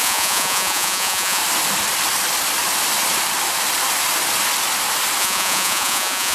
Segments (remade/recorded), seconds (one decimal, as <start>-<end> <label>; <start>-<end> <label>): 0.0-1.4 remade; 1.4-5.2 recorded; 5.2-6.3 remade